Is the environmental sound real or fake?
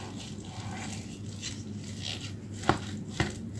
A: real